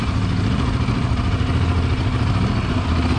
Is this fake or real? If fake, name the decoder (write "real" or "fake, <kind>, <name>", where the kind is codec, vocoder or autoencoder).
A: real